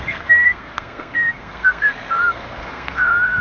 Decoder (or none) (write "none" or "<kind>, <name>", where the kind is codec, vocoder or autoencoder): codec, SNAC